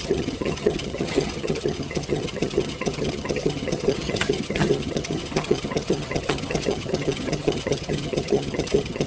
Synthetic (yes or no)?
yes